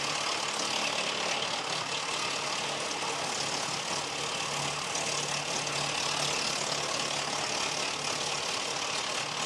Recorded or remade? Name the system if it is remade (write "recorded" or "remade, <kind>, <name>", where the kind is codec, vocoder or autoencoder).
recorded